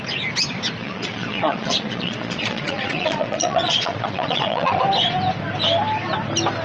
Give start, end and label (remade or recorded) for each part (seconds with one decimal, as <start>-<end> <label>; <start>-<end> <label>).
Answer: 0.0-0.8 recorded; 0.8-4.8 remade; 4.8-6.6 recorded